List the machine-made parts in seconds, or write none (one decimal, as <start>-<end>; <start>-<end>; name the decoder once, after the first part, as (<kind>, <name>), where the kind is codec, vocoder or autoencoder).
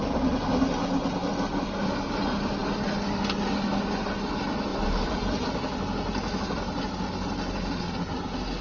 4.7-5.5 (vocoder, BigVGAN v2)